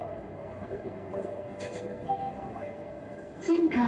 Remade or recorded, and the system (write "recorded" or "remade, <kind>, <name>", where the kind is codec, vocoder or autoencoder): remade, codec, SNAC